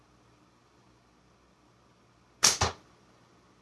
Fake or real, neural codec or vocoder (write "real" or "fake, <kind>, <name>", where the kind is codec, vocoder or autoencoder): real